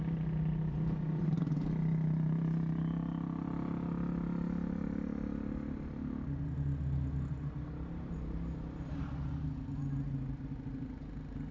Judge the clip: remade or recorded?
recorded